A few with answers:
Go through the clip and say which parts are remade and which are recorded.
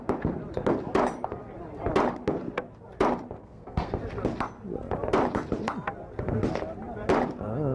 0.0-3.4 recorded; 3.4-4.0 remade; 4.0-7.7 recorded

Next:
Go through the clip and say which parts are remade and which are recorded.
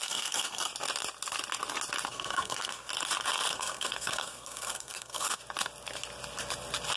0.0-0.7 remade; 0.7-2.1 recorded; 2.1-2.9 remade; 2.9-3.5 recorded; 3.5-5.4 remade; 5.4-7.0 recorded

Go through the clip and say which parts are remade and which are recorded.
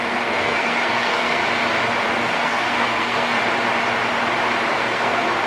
0.0-1.4 remade; 1.4-2.3 recorded; 2.3-3.4 remade; 3.4-4.7 recorded; 4.7-5.5 remade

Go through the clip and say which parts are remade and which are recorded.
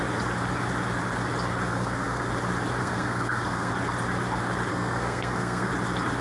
0.0-1.7 recorded; 1.7-2.3 remade; 2.3-2.8 recorded; 2.8-3.7 remade; 3.7-4.7 recorded; 4.7-5.7 remade; 5.7-6.2 recorded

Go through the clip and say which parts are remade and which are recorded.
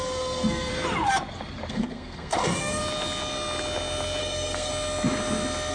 0.0-0.7 remade; 0.7-1.7 recorded; 1.7-2.8 remade; 2.8-4.2 recorded; 4.2-4.7 remade; 4.7-5.7 recorded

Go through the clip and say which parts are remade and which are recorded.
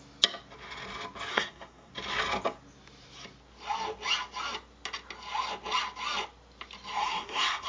0.0-1.3 recorded; 1.3-1.9 remade; 1.9-7.0 recorded; 7.0-7.7 remade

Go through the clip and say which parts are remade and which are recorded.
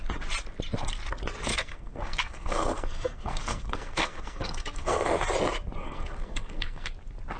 0.0-1.5 recorded; 1.5-5.2 remade; 5.2-5.8 recorded; 5.8-6.9 remade; 6.9-7.4 recorded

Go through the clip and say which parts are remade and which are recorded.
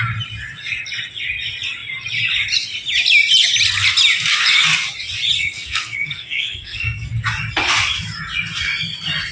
0.0-5.4 recorded; 5.4-7.1 remade; 7.1-9.3 recorded